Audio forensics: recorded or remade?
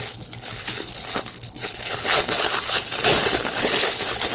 remade